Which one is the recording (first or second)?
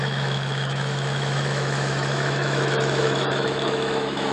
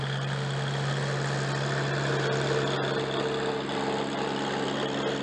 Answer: second